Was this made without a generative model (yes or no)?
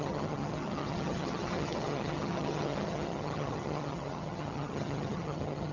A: no